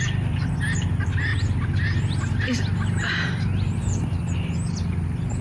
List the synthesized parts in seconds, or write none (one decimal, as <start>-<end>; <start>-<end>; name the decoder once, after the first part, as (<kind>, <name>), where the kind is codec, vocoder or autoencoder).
none